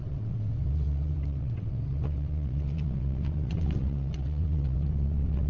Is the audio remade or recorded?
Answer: remade